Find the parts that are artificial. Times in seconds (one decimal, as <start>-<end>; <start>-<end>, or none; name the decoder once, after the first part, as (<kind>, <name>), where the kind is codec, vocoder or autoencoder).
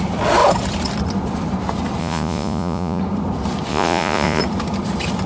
2.0-3.0 (vocoder, Vocos); 3.7-4.4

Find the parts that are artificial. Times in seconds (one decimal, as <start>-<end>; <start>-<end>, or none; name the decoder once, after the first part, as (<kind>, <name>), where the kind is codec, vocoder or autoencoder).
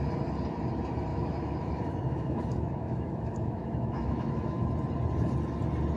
1.1-4.7 (autoencoder, DAC-VAE)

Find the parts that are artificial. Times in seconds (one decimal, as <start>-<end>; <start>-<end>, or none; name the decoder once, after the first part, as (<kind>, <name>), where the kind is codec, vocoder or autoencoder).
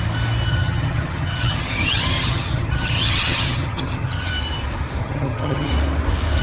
0.5-4.3 (vocoder, HiFi-GAN); 5.0-5.7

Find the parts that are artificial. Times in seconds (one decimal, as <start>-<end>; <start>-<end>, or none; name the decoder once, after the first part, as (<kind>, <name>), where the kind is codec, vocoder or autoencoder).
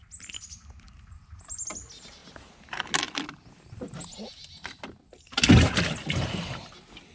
none